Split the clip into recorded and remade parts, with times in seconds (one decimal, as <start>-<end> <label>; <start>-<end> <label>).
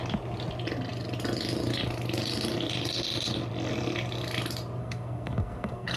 0.0-4.8 recorded; 4.8-6.0 remade